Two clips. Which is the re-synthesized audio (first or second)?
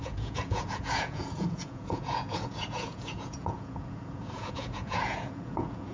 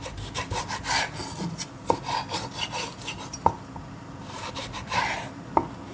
first